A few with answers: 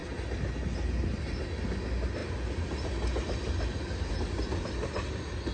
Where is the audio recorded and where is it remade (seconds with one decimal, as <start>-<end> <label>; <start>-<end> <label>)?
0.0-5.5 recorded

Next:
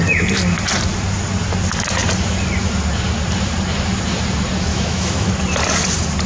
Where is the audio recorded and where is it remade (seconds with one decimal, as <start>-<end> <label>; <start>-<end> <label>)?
0.0-4.7 recorded; 4.7-5.3 remade; 5.3-6.3 recorded

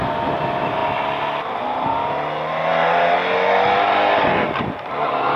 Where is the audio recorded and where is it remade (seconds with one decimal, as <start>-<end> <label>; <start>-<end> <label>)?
0.0-5.4 recorded